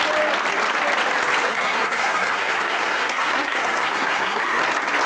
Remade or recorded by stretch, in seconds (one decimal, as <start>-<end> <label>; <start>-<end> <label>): 0.0-1.5 recorded; 1.5-4.6 remade; 4.6-5.1 recorded